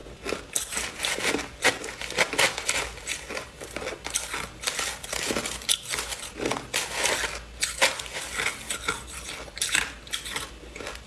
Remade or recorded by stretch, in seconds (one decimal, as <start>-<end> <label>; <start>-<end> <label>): 0.0-11.1 recorded